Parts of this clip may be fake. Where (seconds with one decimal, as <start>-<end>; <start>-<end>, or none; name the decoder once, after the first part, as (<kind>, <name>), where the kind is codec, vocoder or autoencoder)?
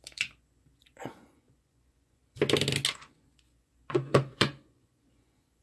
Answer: 0.0-2.2 (vocoder, Vocos); 2.9-5.6